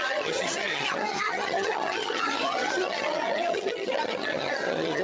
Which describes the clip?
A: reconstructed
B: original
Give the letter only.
A